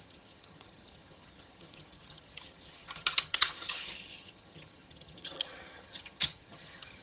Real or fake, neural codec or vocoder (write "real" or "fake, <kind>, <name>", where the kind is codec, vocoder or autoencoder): fake, vocoder, HiFi-GAN